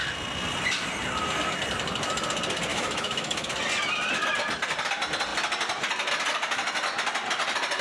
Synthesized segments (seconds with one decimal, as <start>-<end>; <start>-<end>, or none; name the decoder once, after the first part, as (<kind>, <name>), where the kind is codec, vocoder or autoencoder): 2.7-3.5 (autoencoder, DAC-VAE)